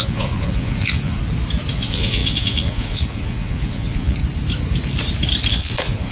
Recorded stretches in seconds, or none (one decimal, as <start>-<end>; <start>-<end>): 1.2-1.7; 4.2-5.5